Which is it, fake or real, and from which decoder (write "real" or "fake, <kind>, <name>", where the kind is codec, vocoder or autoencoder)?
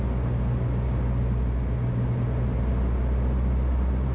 real